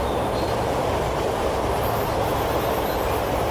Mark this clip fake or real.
real